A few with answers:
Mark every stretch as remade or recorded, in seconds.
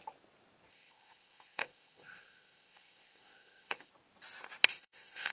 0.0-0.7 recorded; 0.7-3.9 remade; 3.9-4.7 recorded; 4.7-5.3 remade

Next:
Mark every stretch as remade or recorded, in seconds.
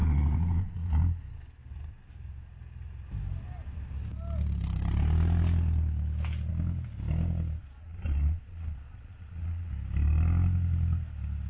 0.0-1.0 remade; 1.0-7.6 recorded; 7.6-9.7 remade; 9.7-11.5 recorded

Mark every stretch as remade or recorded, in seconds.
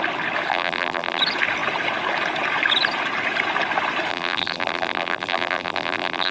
0.0-0.5 recorded; 0.5-1.2 remade; 1.2-4.1 recorded; 4.1-6.3 remade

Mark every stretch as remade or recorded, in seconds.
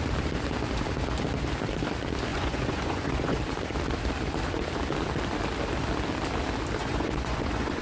0.0-2.3 recorded; 2.3-3.4 remade; 3.4-6.8 recorded; 6.8-7.8 remade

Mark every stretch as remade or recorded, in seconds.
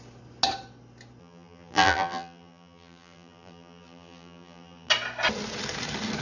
0.0-1.2 recorded; 1.2-4.9 remade; 4.9-6.2 recorded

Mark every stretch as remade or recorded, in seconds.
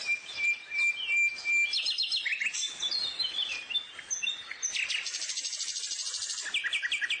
0.0-7.2 recorded